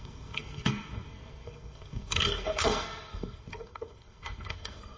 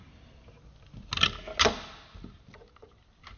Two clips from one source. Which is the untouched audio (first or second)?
second